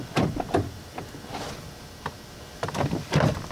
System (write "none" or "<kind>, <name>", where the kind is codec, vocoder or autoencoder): none